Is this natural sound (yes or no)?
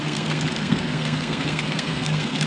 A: no